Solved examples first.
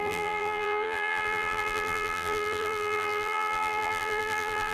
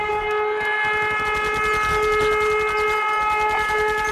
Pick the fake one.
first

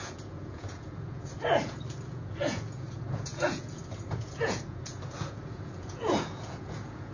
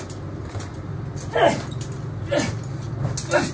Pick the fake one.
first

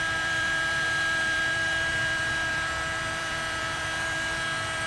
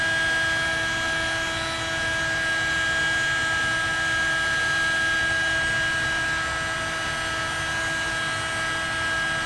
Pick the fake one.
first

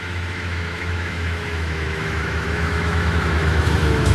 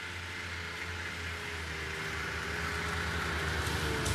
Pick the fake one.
first